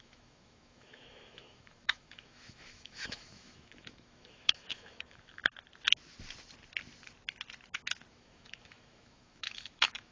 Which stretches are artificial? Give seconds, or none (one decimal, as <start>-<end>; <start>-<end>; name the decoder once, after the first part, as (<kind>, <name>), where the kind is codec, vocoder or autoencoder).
0.0-5.4 (autoencoder, DAC-VAE); 8.1-10.1

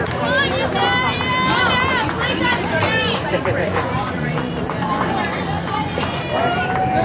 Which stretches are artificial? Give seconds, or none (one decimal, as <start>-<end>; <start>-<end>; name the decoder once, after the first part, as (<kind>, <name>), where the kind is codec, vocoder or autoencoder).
2.0-6.2 (vocoder, Vocos)

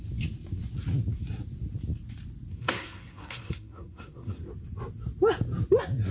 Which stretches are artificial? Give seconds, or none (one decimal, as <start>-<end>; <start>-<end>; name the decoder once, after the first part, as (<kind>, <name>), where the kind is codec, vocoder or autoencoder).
2.5-4.5 (codec, SNAC)

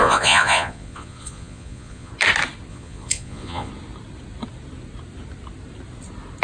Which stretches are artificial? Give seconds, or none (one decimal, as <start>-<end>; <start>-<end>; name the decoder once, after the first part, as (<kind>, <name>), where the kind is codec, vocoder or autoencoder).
0.0-2.1 (vocoder, Vocos); 2.7-3.7

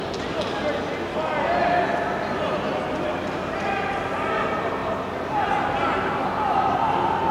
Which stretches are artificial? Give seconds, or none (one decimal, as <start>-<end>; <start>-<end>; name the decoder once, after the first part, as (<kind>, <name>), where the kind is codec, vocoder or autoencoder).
none

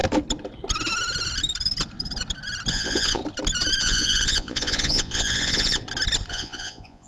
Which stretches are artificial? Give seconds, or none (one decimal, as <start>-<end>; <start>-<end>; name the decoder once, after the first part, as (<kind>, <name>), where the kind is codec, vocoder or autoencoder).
2.7-3.2 (vocoder, Vocos); 3.8-5.8; 6.3-7.1

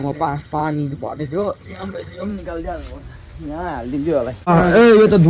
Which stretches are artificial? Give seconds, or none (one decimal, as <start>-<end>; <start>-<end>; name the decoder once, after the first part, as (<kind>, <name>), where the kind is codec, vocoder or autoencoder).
0.0-2.3 (vocoder, HiFi-GAN)